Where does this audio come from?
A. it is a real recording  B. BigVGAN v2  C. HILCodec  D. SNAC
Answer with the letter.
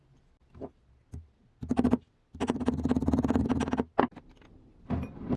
A